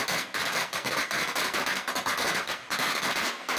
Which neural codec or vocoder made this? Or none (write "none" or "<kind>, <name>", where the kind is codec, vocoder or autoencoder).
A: codec, SNAC